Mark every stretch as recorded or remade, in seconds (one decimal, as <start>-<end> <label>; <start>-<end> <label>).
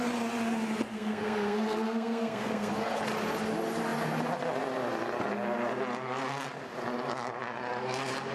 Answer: 0.0-0.9 recorded; 0.9-2.7 remade; 2.7-8.3 recorded